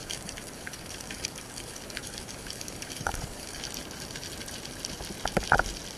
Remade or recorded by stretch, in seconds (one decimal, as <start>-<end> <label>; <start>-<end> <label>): 0.0-3.6 remade; 3.6-6.0 recorded